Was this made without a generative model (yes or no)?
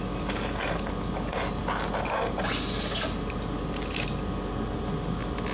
yes